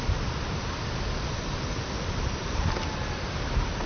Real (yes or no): yes